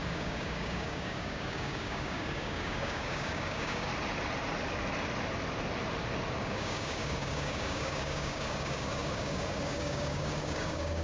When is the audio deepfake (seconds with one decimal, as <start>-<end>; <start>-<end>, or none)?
0.0-3.9; 6.4-11.0